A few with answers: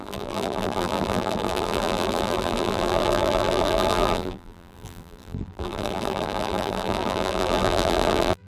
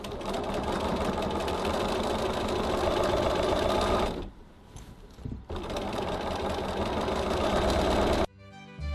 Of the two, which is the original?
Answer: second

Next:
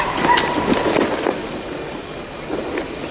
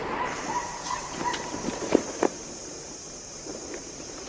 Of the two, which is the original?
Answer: first